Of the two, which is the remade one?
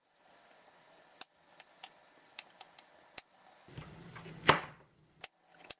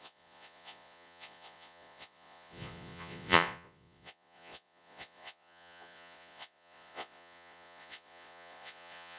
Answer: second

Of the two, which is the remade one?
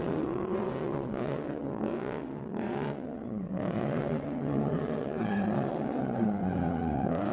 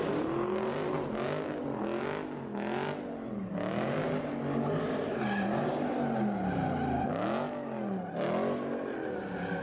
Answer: first